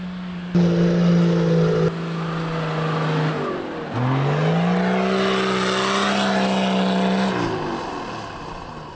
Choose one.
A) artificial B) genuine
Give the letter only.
B